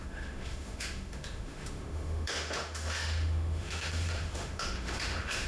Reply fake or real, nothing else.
fake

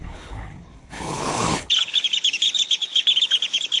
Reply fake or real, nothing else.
fake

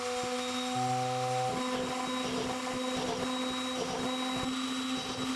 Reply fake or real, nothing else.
real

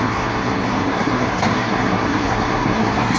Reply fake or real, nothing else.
fake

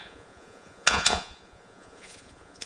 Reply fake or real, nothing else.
fake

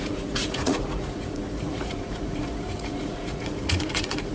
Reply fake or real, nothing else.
fake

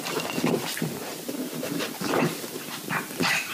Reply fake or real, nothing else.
real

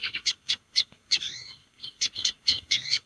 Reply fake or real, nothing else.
fake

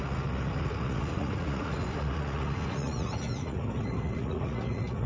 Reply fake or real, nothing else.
fake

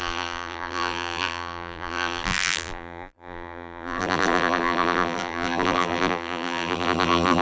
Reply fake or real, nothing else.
fake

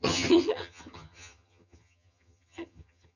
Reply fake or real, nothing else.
fake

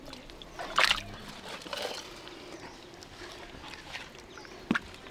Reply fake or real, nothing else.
real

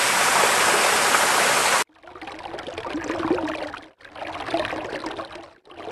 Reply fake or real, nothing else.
real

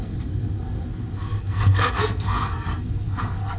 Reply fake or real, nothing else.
fake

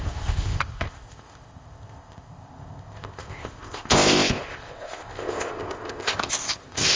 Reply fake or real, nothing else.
fake